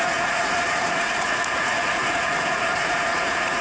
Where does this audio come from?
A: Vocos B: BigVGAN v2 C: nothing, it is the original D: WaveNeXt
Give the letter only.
A